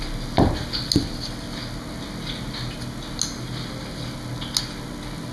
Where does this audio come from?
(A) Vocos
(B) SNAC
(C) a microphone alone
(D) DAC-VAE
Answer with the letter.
C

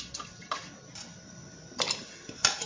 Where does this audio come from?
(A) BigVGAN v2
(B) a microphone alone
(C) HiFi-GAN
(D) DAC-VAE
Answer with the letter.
B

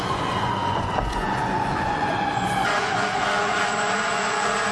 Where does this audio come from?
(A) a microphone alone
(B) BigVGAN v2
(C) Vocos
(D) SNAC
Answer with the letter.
C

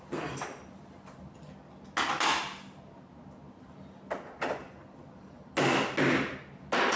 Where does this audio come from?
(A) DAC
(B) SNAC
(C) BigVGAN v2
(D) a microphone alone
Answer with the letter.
D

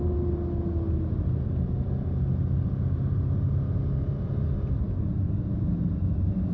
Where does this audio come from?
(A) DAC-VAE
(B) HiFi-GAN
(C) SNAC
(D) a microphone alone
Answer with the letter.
D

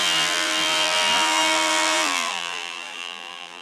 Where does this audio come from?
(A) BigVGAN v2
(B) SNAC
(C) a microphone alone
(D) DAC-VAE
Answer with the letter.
A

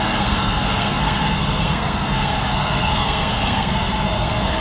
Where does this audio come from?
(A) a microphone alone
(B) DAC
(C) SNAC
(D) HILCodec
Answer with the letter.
C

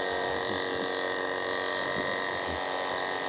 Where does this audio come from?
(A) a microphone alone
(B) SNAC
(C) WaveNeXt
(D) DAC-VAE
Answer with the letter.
A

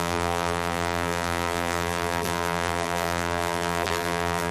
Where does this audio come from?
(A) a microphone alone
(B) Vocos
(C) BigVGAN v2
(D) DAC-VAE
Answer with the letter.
C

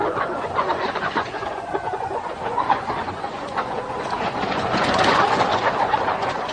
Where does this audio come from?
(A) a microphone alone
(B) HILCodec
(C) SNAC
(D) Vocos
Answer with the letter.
D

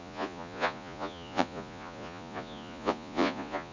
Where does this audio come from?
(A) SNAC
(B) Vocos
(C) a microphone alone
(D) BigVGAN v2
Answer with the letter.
B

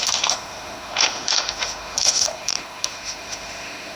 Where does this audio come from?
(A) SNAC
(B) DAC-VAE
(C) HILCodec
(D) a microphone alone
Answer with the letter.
B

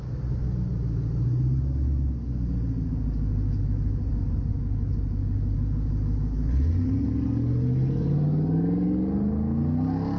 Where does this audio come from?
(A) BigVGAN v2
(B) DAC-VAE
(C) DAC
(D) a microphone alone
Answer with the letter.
D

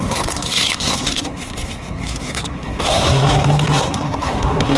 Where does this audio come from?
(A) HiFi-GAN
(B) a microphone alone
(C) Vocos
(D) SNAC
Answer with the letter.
D